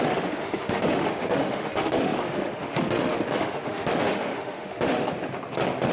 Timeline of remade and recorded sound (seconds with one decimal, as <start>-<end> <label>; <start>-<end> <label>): 0.0-5.0 remade; 5.0-5.9 recorded